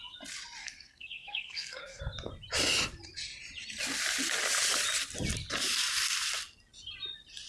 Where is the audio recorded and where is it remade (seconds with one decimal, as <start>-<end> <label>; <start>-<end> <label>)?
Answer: 0.0-0.6 recorded; 0.6-2.0 remade; 2.0-7.5 recorded